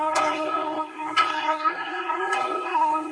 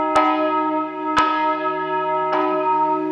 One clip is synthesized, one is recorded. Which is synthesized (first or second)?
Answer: first